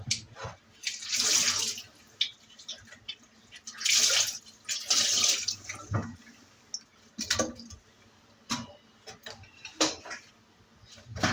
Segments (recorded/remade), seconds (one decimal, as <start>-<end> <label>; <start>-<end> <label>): 0.0-11.3 recorded